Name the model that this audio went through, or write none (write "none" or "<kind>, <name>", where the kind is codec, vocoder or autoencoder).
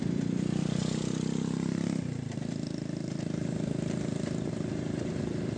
none